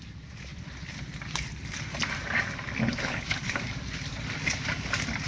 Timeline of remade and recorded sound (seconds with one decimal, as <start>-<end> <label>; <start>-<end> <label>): 0.0-2.8 recorded; 2.8-3.6 remade; 3.6-5.3 recorded